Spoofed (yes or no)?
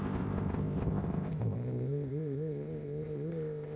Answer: yes